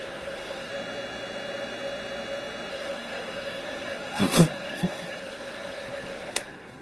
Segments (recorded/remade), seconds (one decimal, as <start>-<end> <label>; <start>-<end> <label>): 0.0-0.7 remade; 0.7-2.7 recorded; 2.7-6.8 remade

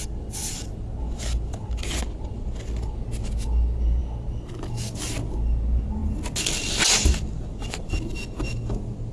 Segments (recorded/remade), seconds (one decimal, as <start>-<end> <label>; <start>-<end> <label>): 0.0-9.1 recorded

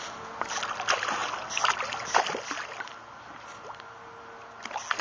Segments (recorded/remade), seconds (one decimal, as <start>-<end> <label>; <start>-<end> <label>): 0.0-5.0 recorded

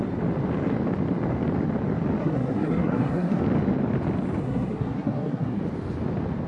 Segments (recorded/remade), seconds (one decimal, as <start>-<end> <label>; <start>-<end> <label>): 0.0-2.2 recorded; 2.2-3.4 remade; 3.4-4.4 recorded; 4.4-5.6 remade; 5.6-6.5 recorded

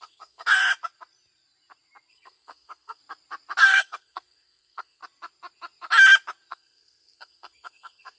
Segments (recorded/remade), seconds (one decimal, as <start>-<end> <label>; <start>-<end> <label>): 0.0-0.6 remade; 0.6-2.1 recorded; 2.1-3.0 remade; 3.0-3.6 recorded; 3.6-5.0 remade; 5.0-6.5 recorded; 6.5-8.2 remade